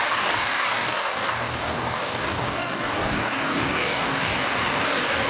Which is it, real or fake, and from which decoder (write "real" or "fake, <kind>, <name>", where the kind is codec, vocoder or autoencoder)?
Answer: fake, codec, DAC